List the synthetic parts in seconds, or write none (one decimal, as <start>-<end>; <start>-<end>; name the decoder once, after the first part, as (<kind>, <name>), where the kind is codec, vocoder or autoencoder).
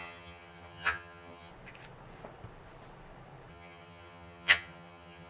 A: 0.0-1.5 (vocoder, HiFi-GAN); 3.5-5.3